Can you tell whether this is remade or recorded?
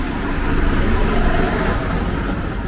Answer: recorded